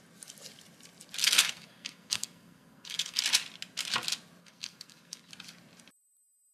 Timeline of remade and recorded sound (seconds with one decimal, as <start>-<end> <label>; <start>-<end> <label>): 0.0-1.2 recorded; 1.2-3.2 remade; 3.2-4.4 recorded; 4.4-5.3 remade; 5.3-6.5 recorded